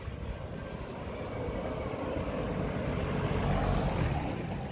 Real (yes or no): yes